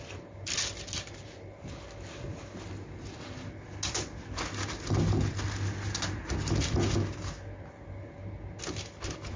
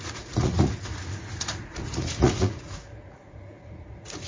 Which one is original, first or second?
first